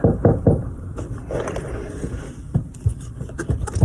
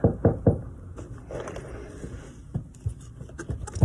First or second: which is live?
second